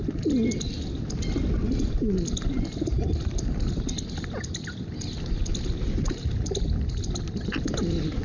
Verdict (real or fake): real